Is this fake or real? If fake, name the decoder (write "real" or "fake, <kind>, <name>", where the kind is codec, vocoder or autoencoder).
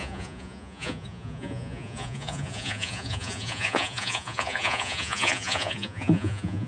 fake, vocoder, Vocos